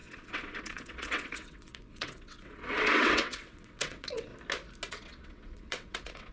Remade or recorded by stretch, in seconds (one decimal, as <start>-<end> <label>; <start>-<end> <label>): 0.0-4.3 remade; 4.3-4.9 recorded; 4.9-6.3 remade